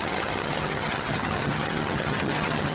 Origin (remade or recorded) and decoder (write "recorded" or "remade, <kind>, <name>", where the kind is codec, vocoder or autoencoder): remade, vocoder, HiFi-GAN